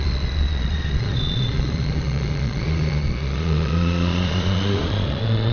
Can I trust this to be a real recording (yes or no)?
no